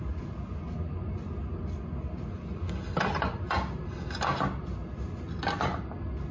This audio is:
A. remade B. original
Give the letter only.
B